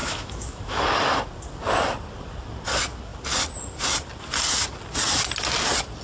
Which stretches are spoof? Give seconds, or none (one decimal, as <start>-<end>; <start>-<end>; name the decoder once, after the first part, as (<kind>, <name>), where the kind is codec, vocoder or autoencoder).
0.0-0.8 (autoencoder, DAC-VAE)